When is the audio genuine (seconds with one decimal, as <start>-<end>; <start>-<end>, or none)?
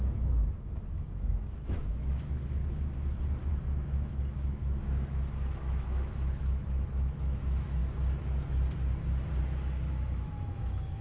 2.6-3.5; 7.8-9.9